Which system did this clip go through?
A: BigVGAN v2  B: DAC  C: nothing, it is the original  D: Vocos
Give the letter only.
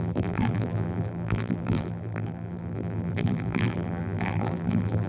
A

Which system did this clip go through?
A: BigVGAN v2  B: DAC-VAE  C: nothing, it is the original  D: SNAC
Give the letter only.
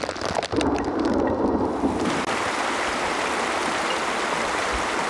C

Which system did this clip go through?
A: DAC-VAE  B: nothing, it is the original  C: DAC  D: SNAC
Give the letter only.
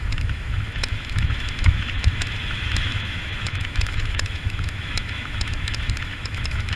A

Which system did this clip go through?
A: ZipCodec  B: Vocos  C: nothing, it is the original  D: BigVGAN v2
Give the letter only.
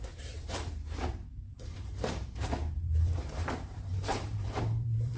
D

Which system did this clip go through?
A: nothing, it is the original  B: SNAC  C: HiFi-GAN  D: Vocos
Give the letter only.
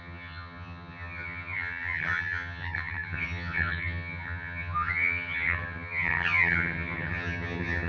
C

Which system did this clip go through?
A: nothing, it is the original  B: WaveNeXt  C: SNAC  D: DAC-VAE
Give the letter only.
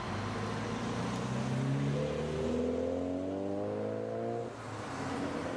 A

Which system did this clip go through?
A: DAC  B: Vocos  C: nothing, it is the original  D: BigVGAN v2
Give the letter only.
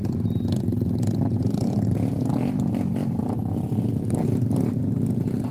C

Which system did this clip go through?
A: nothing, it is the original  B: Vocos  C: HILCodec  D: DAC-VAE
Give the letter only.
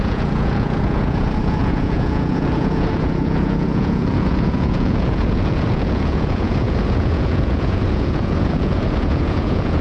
B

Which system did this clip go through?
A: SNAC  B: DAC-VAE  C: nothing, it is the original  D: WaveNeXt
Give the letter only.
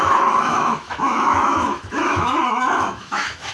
B